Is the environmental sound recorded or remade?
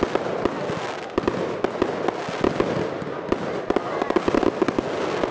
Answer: recorded